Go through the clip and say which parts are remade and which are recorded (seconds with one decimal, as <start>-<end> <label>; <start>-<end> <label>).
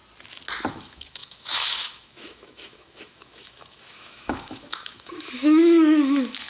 0.0-0.7 recorded; 0.7-6.5 remade